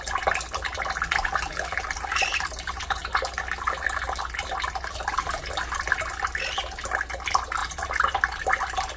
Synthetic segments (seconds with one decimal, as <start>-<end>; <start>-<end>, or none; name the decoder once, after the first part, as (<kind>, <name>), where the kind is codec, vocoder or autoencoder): 2.1-3.0 (vocoder, BigVGAN v2); 7.6-8.6